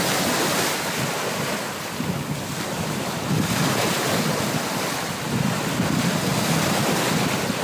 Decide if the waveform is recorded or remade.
recorded